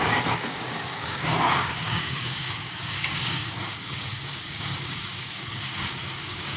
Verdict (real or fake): fake